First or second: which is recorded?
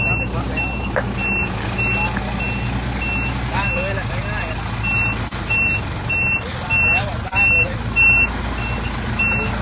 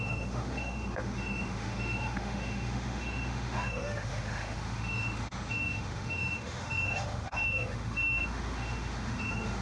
first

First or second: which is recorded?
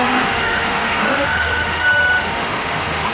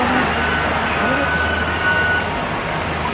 second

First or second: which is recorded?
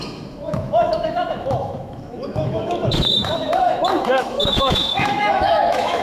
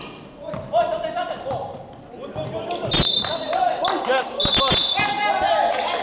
second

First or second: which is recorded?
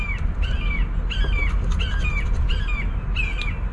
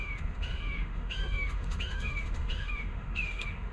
first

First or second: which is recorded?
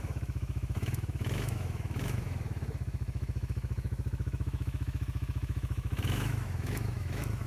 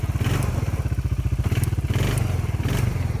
second